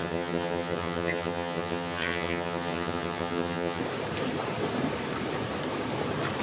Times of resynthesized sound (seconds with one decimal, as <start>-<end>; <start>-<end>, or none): 0.0-3.8

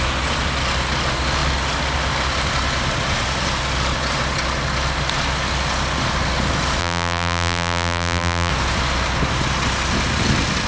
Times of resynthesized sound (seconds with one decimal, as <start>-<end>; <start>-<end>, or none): 6.8-8.5

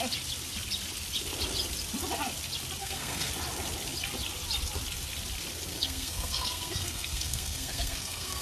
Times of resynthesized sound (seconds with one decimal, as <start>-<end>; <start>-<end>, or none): 2.8-3.3; 5.7-8.4

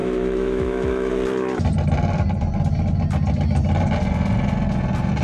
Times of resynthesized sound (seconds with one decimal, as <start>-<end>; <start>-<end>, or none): 0.0-1.1

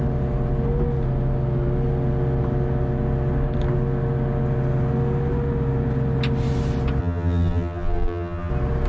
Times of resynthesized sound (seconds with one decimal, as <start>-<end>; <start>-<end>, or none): 7.0-8.5

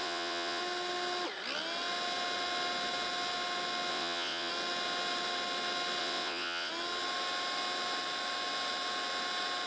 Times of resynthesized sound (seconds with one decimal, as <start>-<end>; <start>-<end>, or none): 0.0-0.6; 3.9-4.5; 6.0-6.7

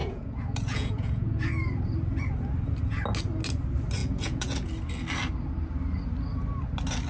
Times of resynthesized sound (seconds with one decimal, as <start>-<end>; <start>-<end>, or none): 0.0-1.5; 4.0-4.7